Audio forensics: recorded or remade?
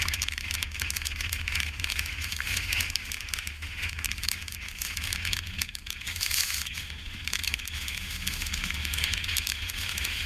remade